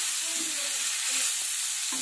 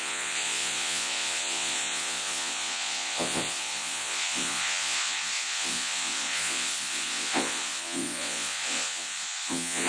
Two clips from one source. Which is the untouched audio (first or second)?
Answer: first